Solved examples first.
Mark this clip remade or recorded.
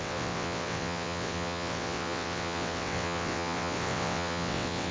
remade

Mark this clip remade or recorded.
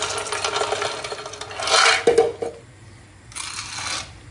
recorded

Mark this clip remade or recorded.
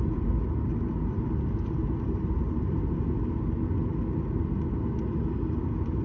recorded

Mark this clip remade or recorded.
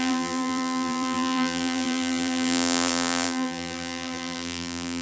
remade